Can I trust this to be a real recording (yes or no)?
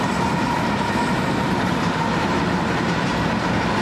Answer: no